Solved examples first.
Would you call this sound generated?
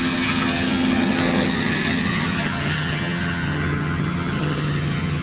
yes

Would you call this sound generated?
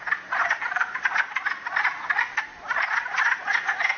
no